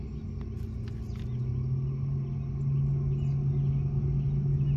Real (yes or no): yes